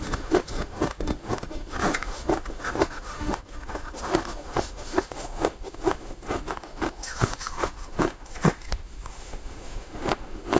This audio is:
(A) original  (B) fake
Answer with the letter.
B